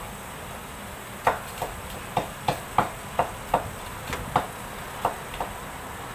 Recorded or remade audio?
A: recorded